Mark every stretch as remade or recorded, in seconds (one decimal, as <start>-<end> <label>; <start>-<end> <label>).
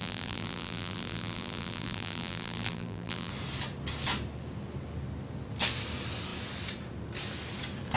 0.0-3.3 remade; 3.3-8.0 recorded